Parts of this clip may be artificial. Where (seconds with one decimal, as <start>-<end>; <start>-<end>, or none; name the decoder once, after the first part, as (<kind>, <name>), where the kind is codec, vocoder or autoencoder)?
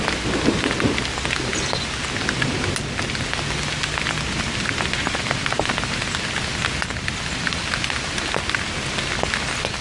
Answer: none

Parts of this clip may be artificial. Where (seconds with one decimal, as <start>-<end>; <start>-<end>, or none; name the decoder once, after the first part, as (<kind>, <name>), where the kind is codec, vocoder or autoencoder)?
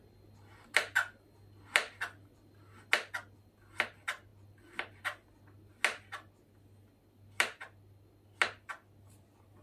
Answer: none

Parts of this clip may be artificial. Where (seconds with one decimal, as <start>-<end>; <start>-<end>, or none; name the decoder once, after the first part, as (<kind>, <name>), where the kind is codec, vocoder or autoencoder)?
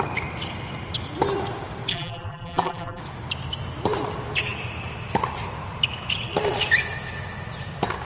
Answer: 1.9-3.0 (vocoder, BigVGAN v2)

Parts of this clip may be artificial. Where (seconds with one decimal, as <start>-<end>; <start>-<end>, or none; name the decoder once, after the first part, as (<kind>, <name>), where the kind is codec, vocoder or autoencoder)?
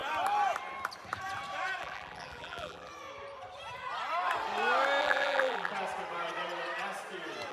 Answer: 1.8-2.9 (vocoder, BigVGAN v2); 5.0-5.7